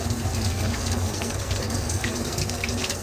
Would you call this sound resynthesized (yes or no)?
yes